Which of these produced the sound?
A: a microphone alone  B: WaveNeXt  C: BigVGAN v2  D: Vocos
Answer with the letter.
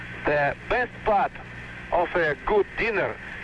A